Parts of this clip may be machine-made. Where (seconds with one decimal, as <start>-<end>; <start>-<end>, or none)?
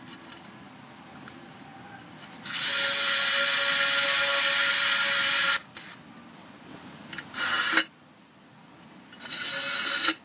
none